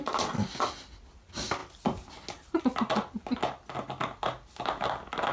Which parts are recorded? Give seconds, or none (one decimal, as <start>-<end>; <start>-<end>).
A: 0.0-5.3